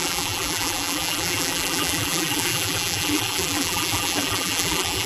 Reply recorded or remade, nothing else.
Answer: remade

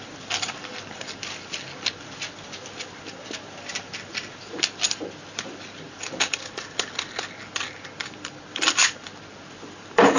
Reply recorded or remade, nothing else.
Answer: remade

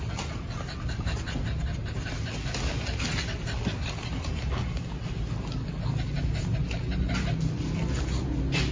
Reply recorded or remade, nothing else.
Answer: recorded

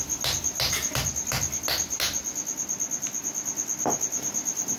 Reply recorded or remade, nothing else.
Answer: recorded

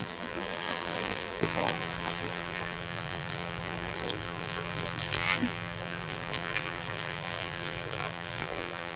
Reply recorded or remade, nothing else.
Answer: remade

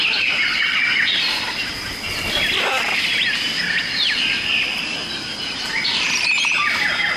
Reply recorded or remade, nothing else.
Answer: remade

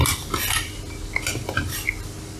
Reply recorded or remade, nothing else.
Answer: remade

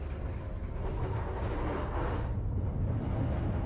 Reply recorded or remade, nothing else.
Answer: recorded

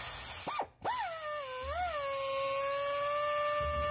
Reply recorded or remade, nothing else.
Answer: recorded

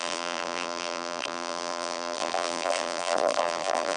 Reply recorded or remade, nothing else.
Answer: remade